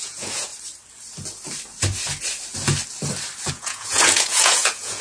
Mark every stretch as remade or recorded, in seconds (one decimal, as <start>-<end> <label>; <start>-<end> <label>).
0.0-0.5 remade; 0.5-3.5 recorded; 3.5-5.0 remade